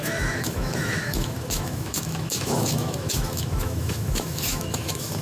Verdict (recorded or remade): remade